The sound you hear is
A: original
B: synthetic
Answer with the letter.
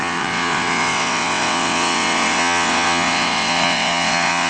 B